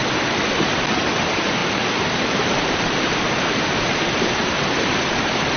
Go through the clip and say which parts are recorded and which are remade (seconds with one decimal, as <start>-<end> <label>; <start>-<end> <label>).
0.0-1.6 recorded; 1.6-5.0 remade; 5.0-5.6 recorded